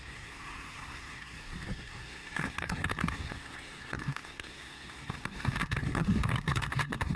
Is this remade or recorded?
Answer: remade